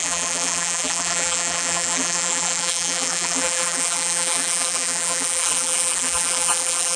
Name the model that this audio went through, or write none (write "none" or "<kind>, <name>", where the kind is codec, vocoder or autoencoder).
vocoder, BigVGAN v2